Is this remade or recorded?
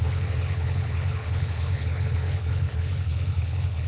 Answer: remade